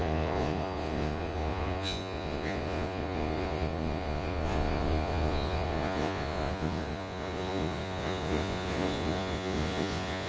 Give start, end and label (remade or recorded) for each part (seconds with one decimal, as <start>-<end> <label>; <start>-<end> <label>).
0.0-10.3 remade